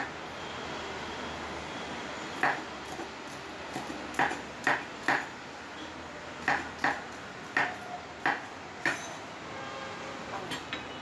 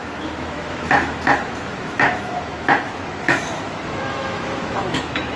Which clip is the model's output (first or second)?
second